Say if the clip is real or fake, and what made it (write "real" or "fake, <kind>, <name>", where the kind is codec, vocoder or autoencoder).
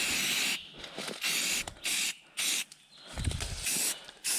real